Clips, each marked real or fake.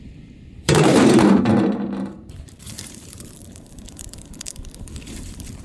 fake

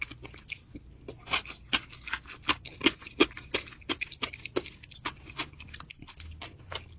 real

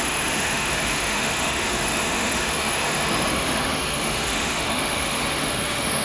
fake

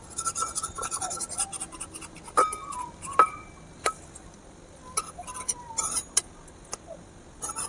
real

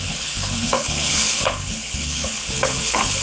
fake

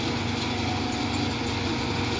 real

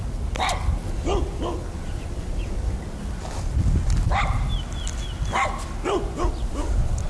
real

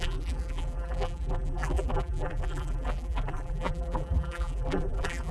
fake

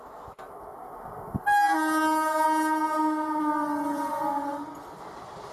real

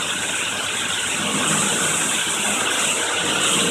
real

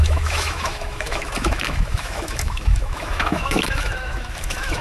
fake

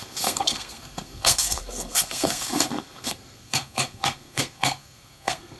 fake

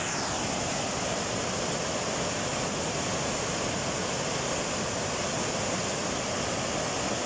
real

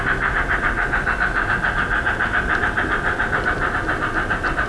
real